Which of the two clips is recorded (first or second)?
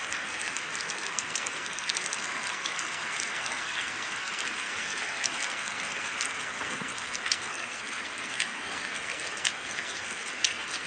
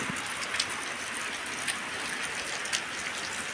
second